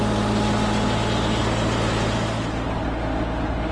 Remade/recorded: recorded